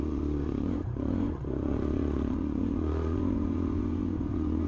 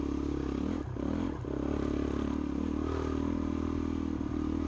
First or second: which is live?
second